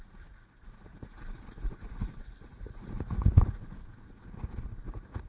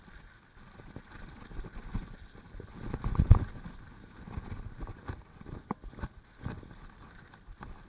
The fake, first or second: first